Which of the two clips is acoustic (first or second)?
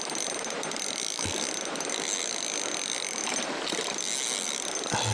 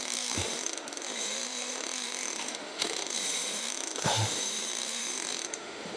first